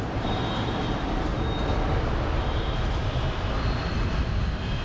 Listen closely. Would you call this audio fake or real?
real